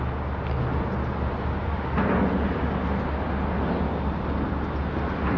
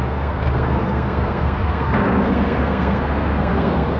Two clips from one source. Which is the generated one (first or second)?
second